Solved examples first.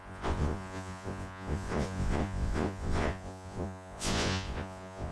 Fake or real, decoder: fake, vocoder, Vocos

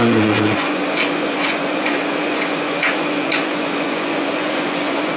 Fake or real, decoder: fake, vocoder, Vocos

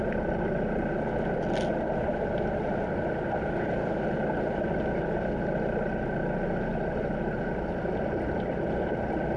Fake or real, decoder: real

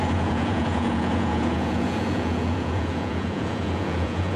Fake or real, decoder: fake, vocoder, Vocos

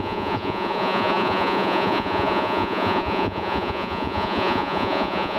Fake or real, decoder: fake, vocoder, Vocos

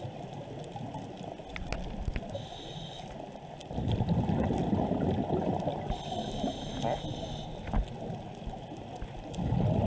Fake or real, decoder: real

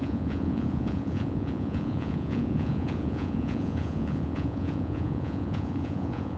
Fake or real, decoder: fake, vocoder, Vocos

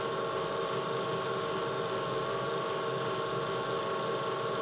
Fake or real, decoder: real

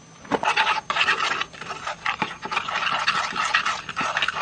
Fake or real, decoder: real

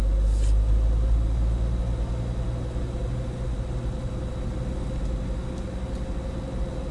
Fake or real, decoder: real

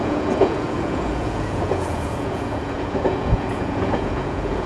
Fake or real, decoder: fake, vocoder, Vocos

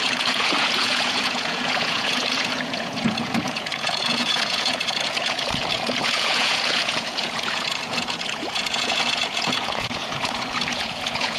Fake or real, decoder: fake, vocoder, Vocos